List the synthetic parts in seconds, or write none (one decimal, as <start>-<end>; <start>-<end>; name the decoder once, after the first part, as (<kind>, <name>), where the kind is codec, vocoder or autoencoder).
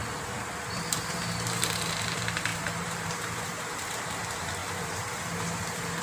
0.7-6.0 (vocoder, BigVGAN v2)